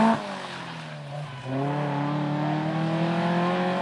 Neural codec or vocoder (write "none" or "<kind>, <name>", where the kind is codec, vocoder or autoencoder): none